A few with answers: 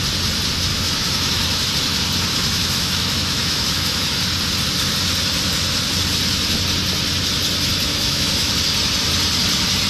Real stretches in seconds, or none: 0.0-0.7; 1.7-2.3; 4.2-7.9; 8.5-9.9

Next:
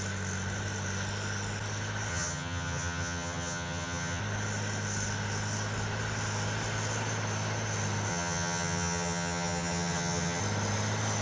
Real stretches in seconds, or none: 0.0-2.1; 4.2-8.1; 10.4-11.2

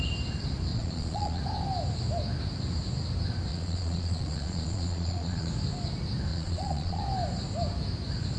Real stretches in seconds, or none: 0.0-0.7; 1.4-3.5; 5.5-6.3; 7.0-8.4

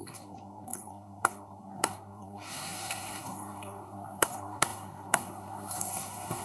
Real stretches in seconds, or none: none